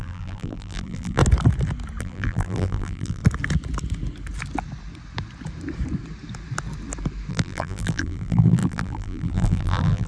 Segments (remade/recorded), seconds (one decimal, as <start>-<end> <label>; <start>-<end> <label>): 0.0-1.2 remade; 1.2-2.0 recorded; 2.0-3.2 remade; 3.2-7.3 recorded; 7.3-10.1 remade